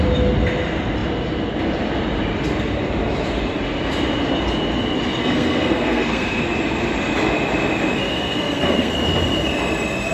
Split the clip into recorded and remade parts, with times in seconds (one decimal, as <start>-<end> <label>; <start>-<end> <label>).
0.0-5.2 recorded; 5.2-6.4 remade; 6.4-8.1 recorded; 8.1-8.9 remade; 8.9-10.1 recorded

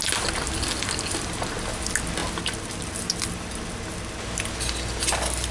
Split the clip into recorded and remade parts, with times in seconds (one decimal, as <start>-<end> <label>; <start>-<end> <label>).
0.0-5.5 recorded

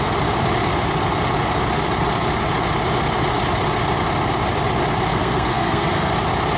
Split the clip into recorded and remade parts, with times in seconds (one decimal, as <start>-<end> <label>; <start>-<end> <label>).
0.0-5.1 recorded; 5.1-6.1 remade; 6.1-6.6 recorded